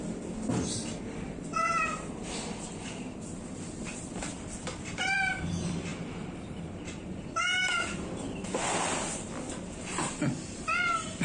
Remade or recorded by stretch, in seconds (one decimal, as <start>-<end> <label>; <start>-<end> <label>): 0.0-11.2 remade